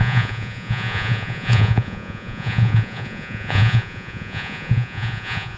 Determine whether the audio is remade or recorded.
remade